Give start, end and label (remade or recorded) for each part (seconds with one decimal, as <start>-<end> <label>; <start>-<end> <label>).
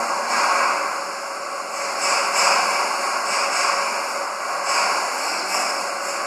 0.0-5.2 recorded; 5.2-5.8 remade; 5.8-6.3 recorded